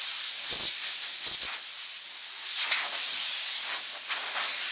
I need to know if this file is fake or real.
real